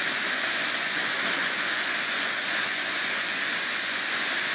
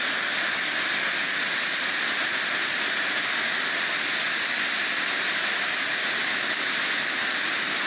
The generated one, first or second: first